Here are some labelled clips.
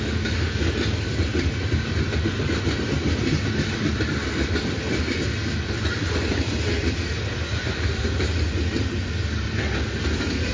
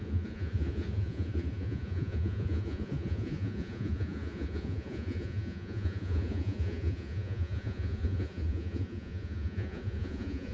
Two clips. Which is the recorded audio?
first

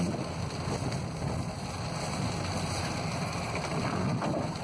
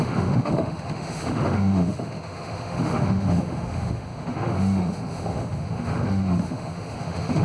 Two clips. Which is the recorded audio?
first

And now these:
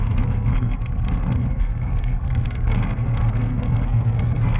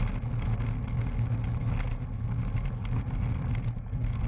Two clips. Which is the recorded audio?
second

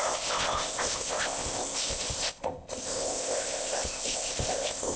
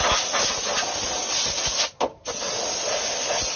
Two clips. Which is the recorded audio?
second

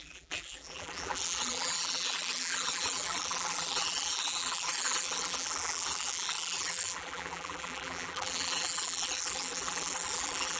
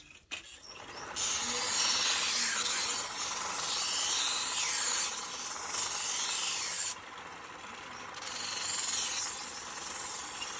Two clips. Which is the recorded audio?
second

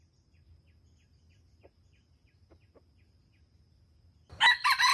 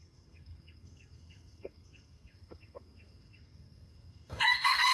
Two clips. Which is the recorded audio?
first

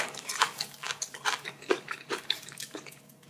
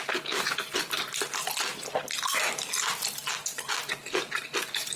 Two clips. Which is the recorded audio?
second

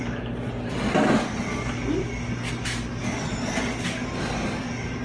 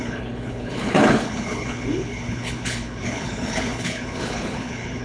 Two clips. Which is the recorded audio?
first